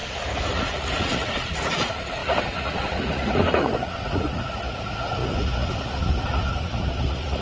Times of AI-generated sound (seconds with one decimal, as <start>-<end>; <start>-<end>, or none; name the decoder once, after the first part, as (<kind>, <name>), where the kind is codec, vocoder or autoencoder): 0.5-7.4 (vocoder, Vocos)